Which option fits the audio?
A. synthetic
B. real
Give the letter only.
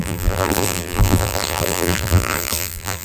A